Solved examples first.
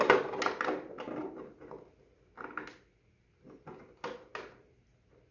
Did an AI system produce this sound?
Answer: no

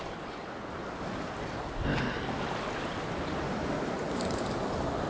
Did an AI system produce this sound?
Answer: no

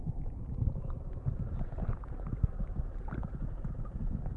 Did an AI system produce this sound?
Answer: no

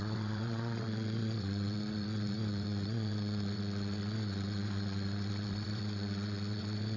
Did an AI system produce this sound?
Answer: yes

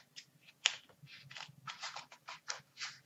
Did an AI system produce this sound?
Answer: no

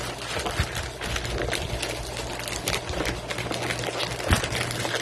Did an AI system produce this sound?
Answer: no